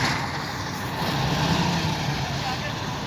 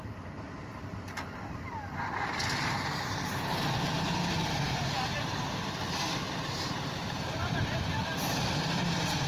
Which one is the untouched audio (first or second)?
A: first